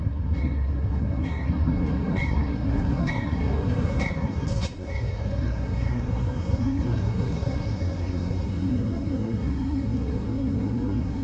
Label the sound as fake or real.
fake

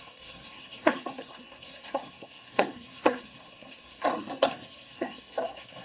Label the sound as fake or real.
fake